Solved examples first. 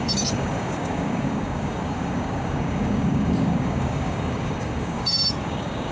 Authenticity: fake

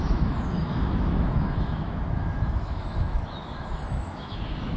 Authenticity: fake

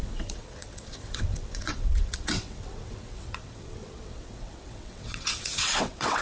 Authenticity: fake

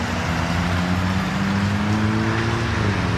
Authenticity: real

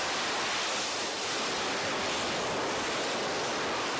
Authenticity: real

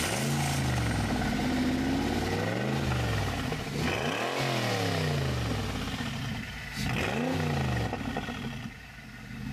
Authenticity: real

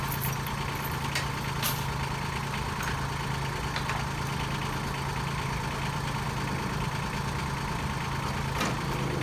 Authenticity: real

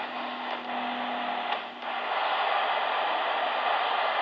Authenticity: real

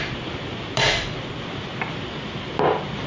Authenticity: real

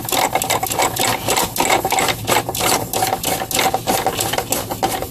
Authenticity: real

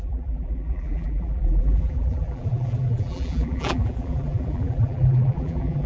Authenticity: fake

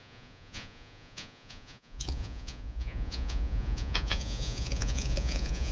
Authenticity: fake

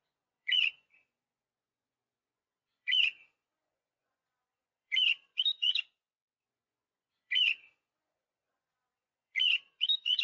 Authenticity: fake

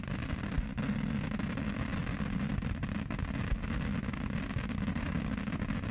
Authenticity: real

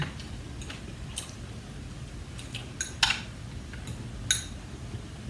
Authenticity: real